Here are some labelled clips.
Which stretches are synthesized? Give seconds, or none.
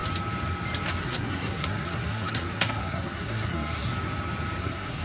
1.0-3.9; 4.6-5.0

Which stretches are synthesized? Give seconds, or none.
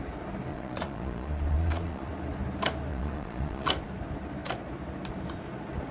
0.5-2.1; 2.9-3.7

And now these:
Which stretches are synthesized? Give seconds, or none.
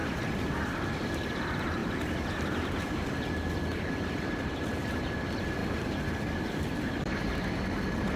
5.6-7.0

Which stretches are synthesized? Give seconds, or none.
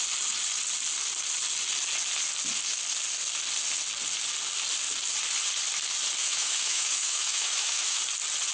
6.2-8.0